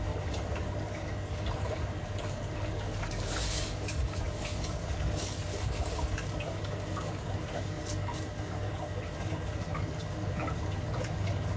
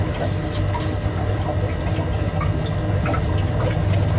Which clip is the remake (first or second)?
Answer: first